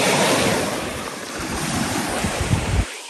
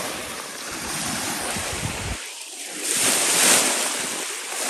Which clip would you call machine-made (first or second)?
first